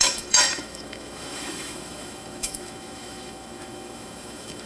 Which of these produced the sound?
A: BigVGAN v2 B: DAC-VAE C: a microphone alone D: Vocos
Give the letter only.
B